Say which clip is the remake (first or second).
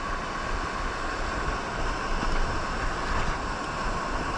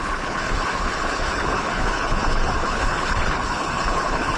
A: second